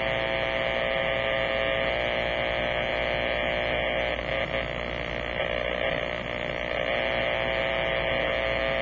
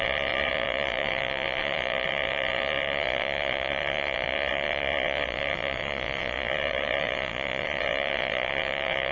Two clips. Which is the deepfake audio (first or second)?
second